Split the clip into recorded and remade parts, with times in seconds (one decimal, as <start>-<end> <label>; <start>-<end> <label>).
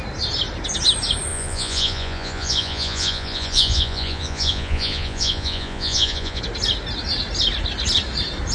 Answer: 0.0-1.3 recorded; 1.3-6.4 remade; 6.4-8.5 recorded